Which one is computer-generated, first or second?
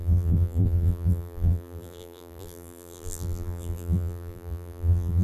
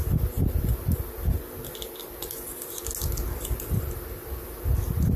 first